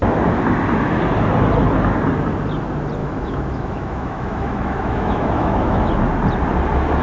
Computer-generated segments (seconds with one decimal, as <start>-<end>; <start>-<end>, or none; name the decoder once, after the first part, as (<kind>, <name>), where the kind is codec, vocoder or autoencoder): 3.0-5.9 (autoencoder, DAC-VAE)